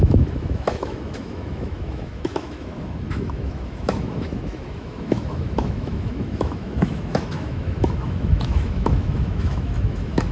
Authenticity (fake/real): fake